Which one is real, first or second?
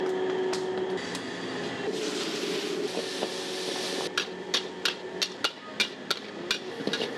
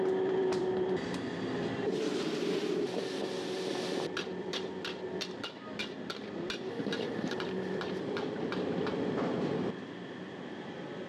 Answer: first